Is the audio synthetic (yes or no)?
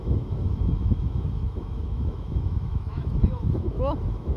yes